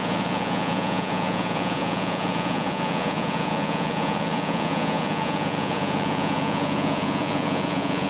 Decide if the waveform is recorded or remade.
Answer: remade